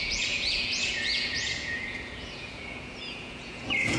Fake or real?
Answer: fake